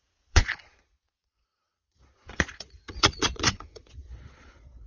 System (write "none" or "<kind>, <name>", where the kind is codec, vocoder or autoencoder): vocoder, Vocos